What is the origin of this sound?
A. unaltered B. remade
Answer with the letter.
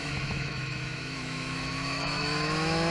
B